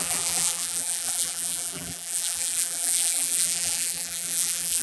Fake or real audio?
fake